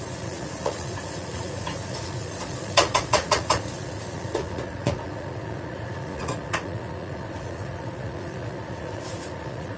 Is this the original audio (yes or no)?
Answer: no